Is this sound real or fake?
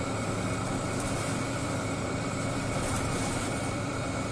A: fake